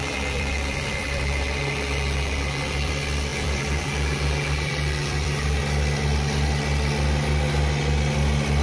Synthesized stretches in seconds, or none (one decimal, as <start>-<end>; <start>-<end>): 0.0-2.9; 3.3-5.6